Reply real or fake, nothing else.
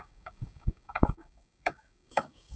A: fake